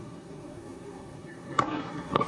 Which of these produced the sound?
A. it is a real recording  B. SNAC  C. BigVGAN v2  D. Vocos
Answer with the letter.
B